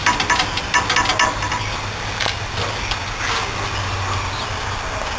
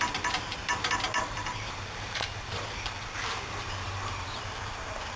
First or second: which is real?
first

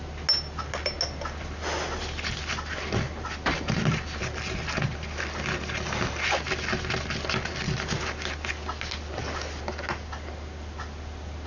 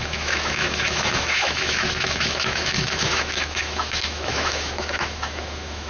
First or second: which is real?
first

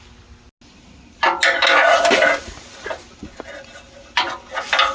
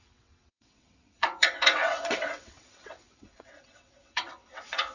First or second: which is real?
first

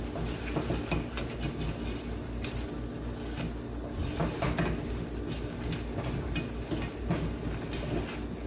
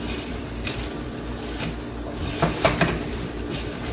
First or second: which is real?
first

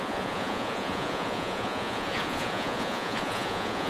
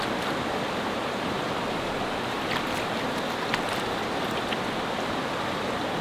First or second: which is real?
second